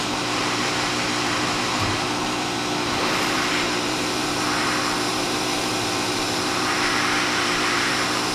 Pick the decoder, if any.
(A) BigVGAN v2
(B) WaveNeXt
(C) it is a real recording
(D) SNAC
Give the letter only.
A